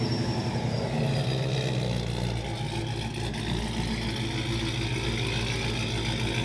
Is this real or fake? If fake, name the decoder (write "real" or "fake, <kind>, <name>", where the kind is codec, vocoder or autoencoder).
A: real